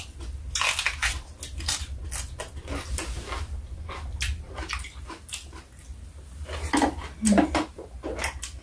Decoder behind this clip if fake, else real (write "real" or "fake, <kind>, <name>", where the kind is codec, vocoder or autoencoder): real